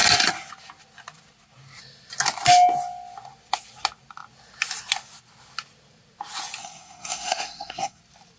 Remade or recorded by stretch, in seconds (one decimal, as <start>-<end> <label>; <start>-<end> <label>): 0.0-6.6 recorded; 6.6-8.0 remade; 8.0-8.4 recorded